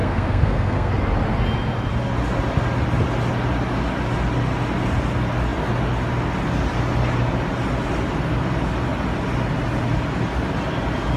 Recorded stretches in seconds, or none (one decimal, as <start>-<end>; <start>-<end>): 0.9-11.2